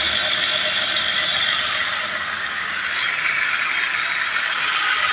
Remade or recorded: recorded